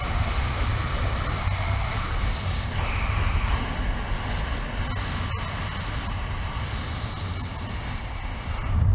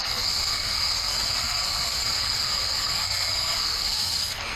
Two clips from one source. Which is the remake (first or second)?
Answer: second